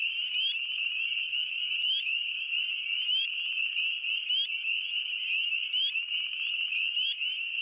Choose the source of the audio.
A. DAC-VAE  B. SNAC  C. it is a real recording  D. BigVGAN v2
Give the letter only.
D